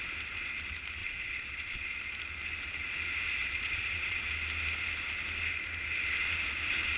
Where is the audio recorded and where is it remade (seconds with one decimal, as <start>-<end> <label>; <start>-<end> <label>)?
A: 0.0-1.0 recorded; 1.0-1.6 remade; 1.6-3.4 recorded; 3.4-4.2 remade; 4.2-7.0 recorded